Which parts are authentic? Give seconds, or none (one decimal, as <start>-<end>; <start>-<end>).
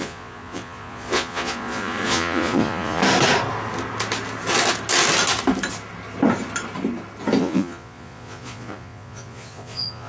3.0-7.4